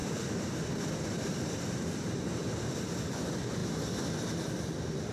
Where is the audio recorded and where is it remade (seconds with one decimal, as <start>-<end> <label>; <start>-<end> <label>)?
0.0-3.1 remade; 3.1-5.1 recorded